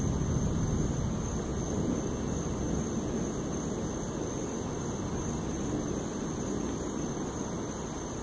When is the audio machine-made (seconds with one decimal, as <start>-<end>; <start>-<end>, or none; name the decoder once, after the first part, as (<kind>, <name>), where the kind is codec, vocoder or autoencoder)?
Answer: none